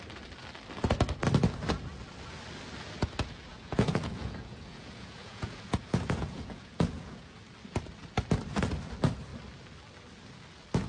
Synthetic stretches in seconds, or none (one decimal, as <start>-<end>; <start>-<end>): 3.5-7.4